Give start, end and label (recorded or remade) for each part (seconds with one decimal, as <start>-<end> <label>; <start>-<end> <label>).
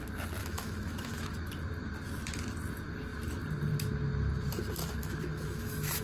0.0-0.4 recorded; 0.4-1.5 remade; 1.5-4.8 recorded; 4.8-6.0 remade